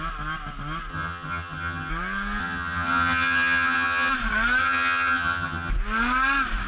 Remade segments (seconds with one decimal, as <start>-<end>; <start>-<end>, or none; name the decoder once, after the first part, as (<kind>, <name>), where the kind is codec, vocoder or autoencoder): 0.9-1.9 (vocoder, HiFi-GAN); 2.4-4.1; 4.6-5.7